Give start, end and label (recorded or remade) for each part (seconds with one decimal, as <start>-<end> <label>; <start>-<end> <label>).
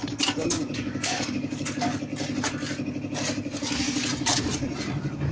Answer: 0.0-2.1 remade; 2.1-5.3 recorded